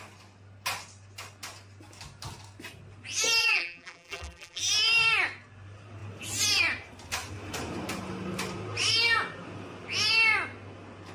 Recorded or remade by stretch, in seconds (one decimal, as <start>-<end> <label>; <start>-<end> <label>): 0.0-3.4 recorded; 3.4-4.6 remade; 4.6-11.1 recorded

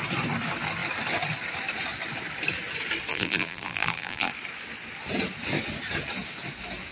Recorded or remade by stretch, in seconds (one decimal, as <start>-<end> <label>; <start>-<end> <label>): 0.0-3.1 recorded; 3.1-4.3 remade; 4.3-6.9 recorded

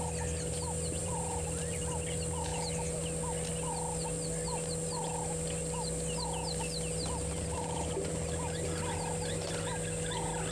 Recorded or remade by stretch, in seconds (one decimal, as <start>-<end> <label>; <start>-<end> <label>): 0.0-1.0 recorded; 1.0-1.8 remade; 1.8-10.5 recorded